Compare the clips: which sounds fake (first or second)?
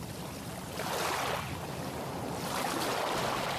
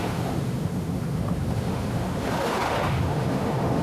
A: second